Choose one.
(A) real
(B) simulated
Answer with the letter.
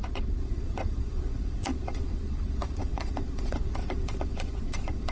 B